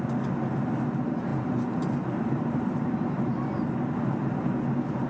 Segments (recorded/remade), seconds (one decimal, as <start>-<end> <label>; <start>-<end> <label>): 0.0-1.3 recorded; 1.3-4.4 remade; 4.4-5.1 recorded